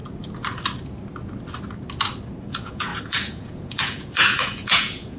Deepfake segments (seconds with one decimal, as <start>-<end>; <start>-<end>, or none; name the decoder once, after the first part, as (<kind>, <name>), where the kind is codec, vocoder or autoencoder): 2.5-5.2 (vocoder, Vocos)